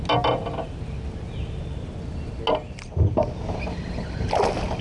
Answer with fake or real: real